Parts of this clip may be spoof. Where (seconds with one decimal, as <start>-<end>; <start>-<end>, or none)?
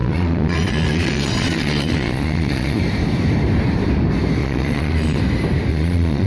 0.0-2.8; 4.4-5.2; 5.7-6.3